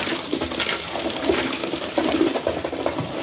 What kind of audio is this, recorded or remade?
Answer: recorded